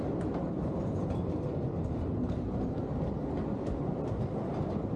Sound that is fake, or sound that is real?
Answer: real